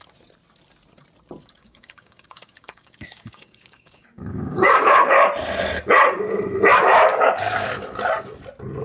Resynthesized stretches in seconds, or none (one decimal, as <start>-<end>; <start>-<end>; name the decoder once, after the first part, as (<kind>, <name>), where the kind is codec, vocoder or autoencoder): 1.6-5.3 (codec, DAC); 7.1-7.7